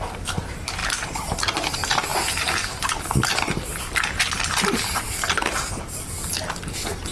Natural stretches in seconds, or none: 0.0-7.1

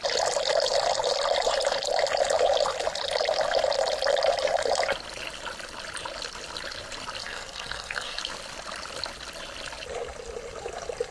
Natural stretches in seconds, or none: 0.0-7.2; 8.2-11.1

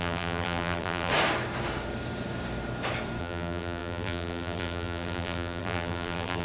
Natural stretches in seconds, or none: 1.1-3.2

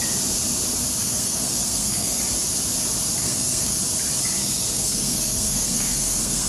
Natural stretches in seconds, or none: 0.0-1.0; 2.2-3.2; 3.8-4.4

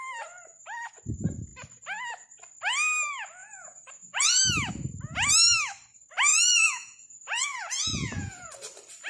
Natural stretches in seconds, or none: 0.0-3.4; 4.4-6.3; 8.5-9.1